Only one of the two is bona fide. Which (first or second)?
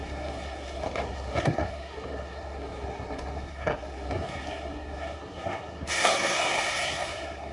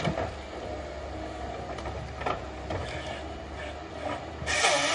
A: second